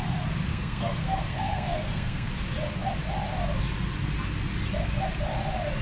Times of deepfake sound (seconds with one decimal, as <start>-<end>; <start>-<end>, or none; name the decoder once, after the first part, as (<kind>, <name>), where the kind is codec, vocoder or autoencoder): 0.5-2.3 (codec, SNAC)